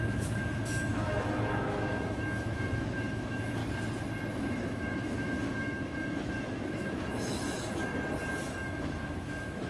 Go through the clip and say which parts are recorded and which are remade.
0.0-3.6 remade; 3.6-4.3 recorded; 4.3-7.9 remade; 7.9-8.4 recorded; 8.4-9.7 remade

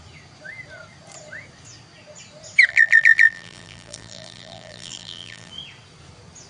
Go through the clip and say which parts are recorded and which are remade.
0.0-2.7 recorded; 2.7-5.5 remade; 5.5-6.5 recorded

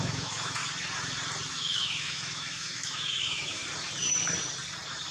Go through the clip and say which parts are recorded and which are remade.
0.0-0.6 remade; 0.6-1.5 recorded; 1.5-3.6 remade; 3.6-5.1 recorded

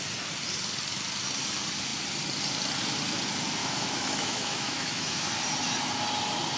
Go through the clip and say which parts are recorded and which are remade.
0.0-3.6 recorded; 3.6-5.3 remade; 5.3-6.6 recorded

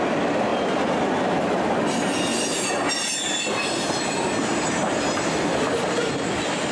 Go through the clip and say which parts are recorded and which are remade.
0.0-6.7 recorded

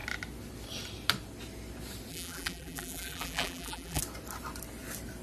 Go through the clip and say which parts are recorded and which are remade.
0.0-2.1 recorded; 2.1-4.0 remade; 4.0-5.2 recorded